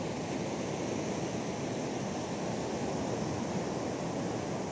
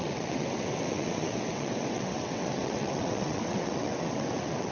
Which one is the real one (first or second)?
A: first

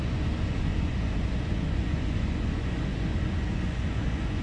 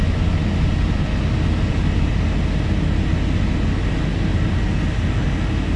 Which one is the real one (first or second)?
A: second